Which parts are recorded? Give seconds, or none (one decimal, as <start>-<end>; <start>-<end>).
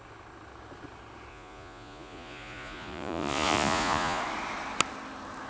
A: 0.0-1.3; 4.2-5.5